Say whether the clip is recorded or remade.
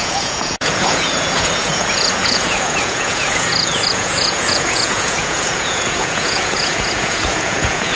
remade